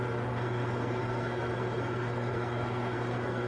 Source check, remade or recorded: remade